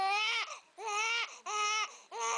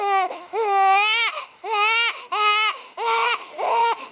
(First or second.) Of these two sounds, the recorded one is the first